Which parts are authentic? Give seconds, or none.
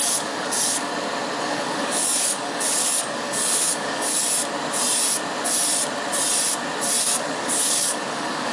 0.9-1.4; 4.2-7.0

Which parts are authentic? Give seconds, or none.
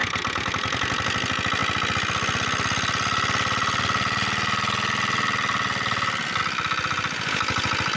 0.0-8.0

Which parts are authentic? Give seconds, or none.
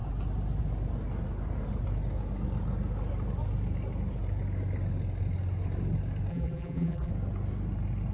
0.0-6.3; 7.1-8.1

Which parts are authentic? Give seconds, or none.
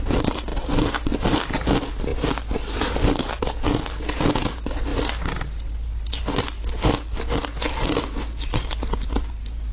0.0-9.7